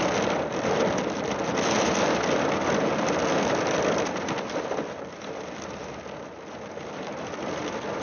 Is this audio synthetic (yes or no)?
yes